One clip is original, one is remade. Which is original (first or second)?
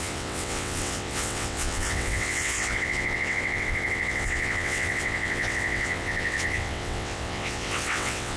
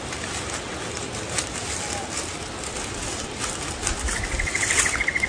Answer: second